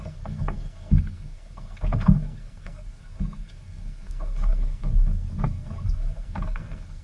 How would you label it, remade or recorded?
remade